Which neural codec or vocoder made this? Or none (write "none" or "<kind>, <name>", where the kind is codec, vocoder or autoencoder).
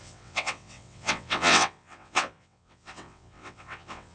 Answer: vocoder, WaveNeXt